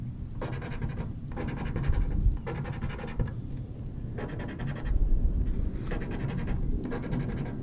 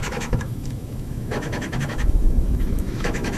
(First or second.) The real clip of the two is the first